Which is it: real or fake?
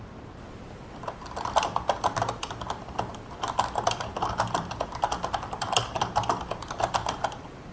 fake